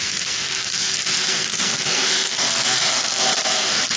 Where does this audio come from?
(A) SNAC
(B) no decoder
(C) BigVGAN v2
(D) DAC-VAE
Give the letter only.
A